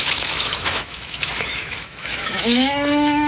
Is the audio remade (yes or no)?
yes